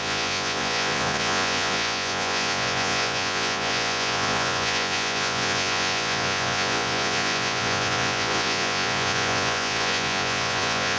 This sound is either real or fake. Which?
fake